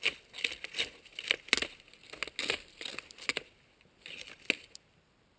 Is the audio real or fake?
real